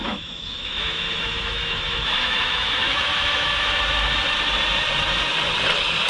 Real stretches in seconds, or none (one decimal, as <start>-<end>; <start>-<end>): 3.7-6.1